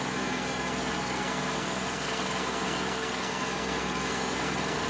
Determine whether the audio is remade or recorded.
remade